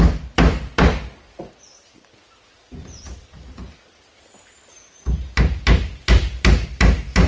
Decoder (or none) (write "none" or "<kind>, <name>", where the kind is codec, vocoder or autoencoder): vocoder, BigVGAN v2